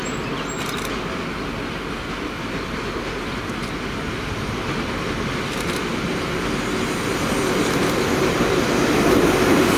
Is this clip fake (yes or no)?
no